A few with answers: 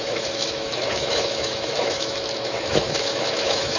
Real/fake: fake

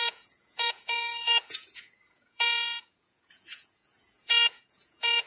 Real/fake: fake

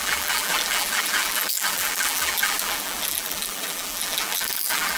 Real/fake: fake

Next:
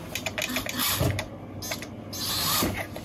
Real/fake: real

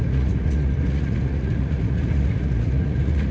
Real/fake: fake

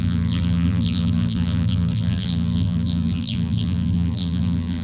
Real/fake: fake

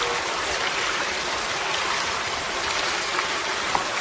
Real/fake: real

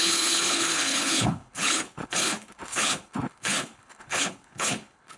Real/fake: fake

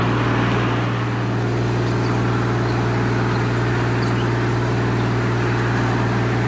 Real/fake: real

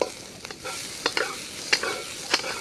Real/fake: real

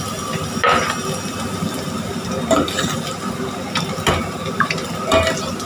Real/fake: real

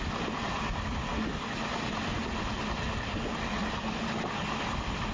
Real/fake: real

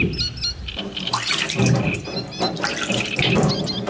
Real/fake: real